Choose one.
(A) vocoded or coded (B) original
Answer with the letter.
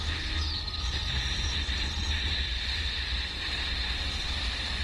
B